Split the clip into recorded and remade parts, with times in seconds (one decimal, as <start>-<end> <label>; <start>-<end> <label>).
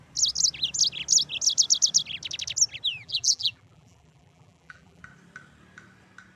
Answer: 0.0-2.9 recorded; 2.9-5.0 remade; 5.0-6.4 recorded